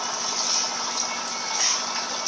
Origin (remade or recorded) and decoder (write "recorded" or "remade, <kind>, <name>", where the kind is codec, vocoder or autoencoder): recorded